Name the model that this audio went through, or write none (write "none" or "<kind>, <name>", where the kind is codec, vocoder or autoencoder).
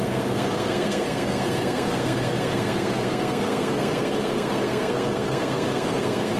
codec, SNAC